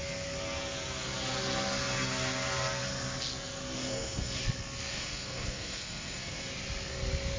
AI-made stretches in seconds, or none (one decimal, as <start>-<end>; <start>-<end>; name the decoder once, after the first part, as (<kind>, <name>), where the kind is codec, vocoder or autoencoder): 3.8-4.4 (codec, SNAC); 4.9-6.5